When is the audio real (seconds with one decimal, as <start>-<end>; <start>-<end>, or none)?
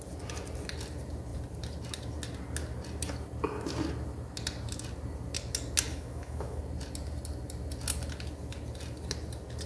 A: 0.0-5.9; 6.6-9.7